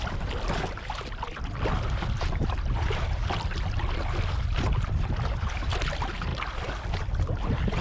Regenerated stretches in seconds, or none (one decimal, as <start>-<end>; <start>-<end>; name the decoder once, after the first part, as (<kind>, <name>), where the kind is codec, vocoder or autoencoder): none